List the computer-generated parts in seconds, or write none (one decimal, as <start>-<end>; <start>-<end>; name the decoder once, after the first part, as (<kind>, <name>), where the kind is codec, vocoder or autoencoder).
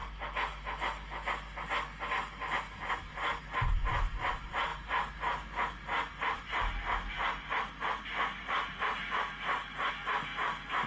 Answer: none